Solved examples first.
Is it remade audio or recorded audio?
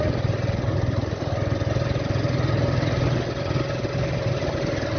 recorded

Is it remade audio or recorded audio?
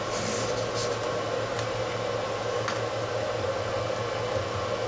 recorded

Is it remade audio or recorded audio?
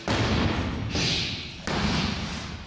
recorded